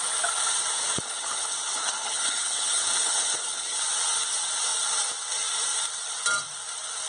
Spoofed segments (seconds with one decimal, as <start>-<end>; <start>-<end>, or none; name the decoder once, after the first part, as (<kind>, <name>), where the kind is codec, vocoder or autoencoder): 0.8-3.8 (codec, HILCodec)